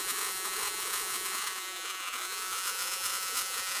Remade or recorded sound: remade